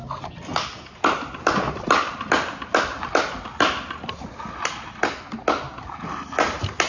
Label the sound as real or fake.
real